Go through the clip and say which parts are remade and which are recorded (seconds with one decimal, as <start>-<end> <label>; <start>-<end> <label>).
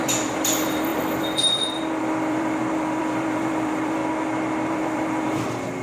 0.0-4.0 remade; 4.0-4.7 recorded; 4.7-5.8 remade